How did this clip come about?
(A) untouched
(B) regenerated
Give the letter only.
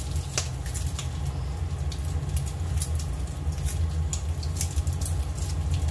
A